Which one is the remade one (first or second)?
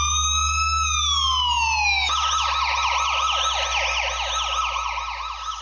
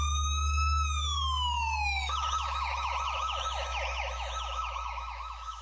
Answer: second